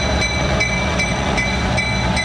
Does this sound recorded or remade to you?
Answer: remade